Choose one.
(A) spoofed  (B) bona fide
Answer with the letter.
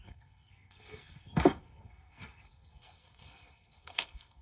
A